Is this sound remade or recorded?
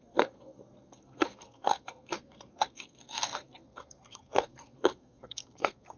remade